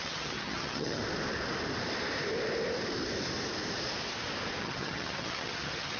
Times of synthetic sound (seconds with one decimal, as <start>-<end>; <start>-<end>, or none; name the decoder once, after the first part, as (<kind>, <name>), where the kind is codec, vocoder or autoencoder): 0.0-1.0 (vocoder, HiFi-GAN); 4.6-6.0